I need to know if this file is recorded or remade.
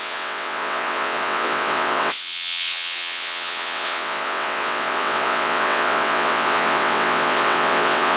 remade